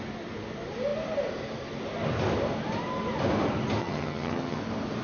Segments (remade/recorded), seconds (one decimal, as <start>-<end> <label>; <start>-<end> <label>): 0.0-3.8 recorded; 3.8-4.6 remade; 4.6-5.0 recorded

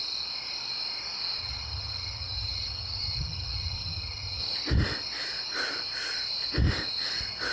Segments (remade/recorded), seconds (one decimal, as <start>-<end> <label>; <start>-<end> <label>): 0.0-1.4 recorded; 1.4-4.4 remade; 4.4-7.5 recorded

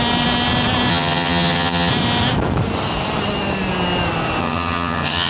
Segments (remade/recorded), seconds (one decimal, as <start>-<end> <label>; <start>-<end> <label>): 0.0-0.9 recorded; 0.9-1.9 remade; 1.9-4.4 recorded; 4.4-5.3 remade

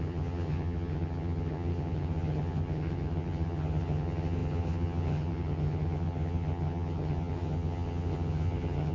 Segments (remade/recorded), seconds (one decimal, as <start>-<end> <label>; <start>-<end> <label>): 0.0-8.9 remade

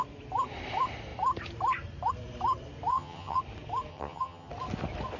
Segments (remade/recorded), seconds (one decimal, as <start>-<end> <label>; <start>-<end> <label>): 0.0-2.9 recorded; 2.9-3.4 remade; 3.4-3.9 recorded; 3.9-4.5 remade; 4.5-5.2 recorded

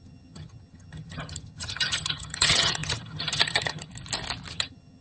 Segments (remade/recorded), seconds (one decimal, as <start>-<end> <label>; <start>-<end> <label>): 0.0-3.9 remade; 3.9-4.5 recorded; 4.5-5.0 remade